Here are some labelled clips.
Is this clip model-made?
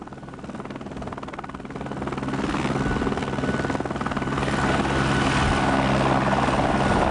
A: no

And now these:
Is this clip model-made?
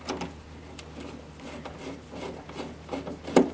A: yes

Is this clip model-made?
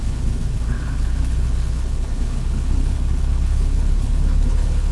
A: yes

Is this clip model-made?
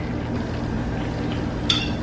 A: no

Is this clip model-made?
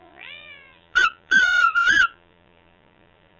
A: yes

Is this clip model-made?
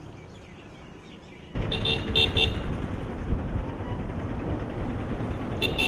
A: no